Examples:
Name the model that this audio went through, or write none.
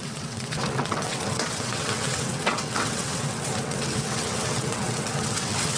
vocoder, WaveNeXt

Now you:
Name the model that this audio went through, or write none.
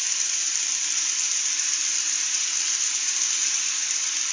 vocoder, BigVGAN v2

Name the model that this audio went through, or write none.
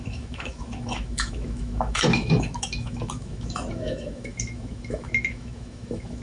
autoencoder, DAC-VAE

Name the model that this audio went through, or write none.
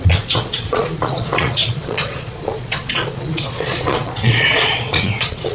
vocoder, Vocos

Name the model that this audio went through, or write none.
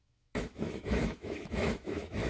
autoencoder, DAC-VAE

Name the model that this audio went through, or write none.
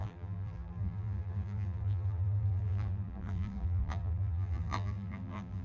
vocoder, BigVGAN v2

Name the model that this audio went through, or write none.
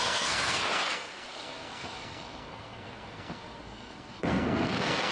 codec, SNAC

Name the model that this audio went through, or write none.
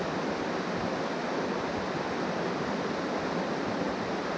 none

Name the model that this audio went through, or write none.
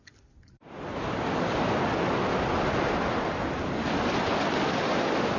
none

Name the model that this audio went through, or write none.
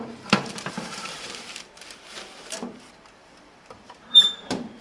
vocoder, BigVGAN v2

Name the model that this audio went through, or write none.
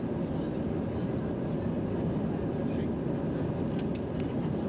none